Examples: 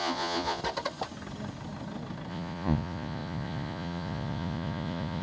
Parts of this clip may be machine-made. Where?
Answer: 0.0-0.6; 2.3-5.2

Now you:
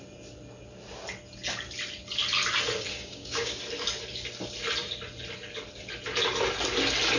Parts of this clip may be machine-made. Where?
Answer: 2.9-3.6

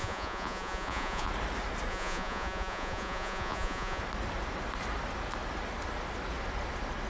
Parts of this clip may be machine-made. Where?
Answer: 0.0-1.3; 1.9-4.0

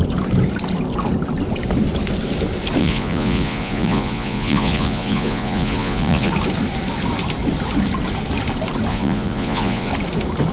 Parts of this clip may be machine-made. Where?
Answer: 2.8-6.3; 8.9-9.9